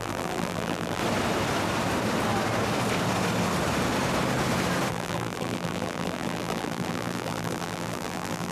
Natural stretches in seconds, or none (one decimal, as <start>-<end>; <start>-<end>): 1.0-4.9